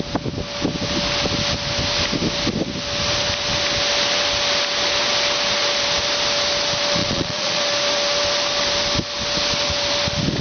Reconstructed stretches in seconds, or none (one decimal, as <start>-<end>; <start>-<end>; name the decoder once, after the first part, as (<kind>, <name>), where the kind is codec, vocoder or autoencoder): 7.0-7.6 (vocoder, Vocos)